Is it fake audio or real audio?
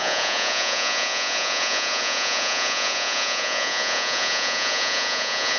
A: fake